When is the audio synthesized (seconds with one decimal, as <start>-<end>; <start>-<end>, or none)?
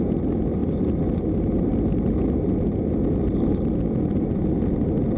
none